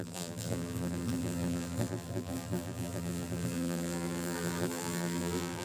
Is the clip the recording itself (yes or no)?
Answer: no